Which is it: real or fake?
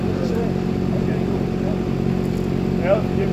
real